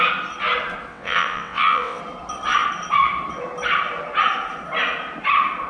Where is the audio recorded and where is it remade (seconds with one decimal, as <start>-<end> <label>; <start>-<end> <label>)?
0.0-0.9 recorded; 0.9-2.0 remade; 2.0-5.7 recorded